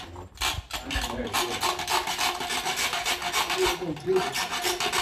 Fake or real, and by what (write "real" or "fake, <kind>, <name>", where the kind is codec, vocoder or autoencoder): real